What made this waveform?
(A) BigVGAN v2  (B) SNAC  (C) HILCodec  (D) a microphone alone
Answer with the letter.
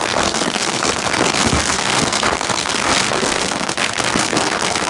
B